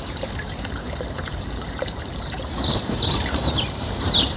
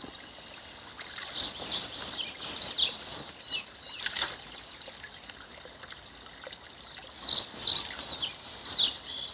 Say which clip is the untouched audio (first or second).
second